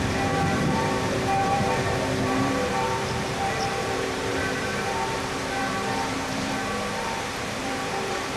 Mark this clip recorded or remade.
remade